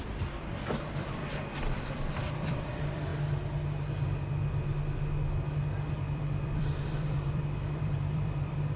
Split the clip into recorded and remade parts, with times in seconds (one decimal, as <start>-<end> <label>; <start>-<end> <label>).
0.0-1.2 remade; 1.2-2.1 recorded; 2.1-3.1 remade; 3.1-5.9 recorded; 5.9-8.8 remade